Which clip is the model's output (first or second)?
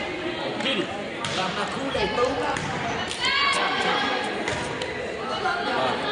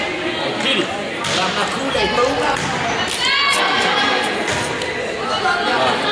first